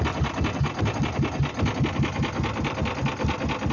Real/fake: real